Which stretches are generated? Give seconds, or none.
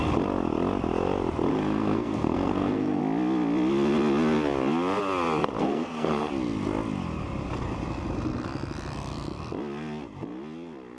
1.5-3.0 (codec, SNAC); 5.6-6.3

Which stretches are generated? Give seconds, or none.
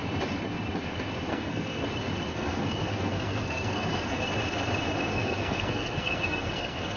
1.3-1.8 (codec, SNAC); 2.3-4.2; 5.1-7.0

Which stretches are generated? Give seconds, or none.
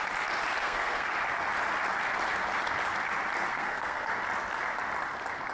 0.6-1.1 (codec, SNAC); 3.5-4.1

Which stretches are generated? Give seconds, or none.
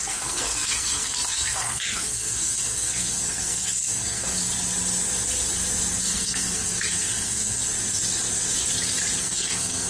0.0-4.4 (codec, SNAC); 6.0-7.6; 9.2-9.9